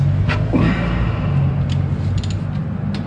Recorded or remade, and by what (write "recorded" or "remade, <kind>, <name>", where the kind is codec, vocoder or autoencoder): recorded